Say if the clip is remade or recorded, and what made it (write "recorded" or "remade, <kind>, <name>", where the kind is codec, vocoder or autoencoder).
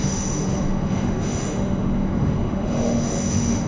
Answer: remade, autoencoder, DAC-VAE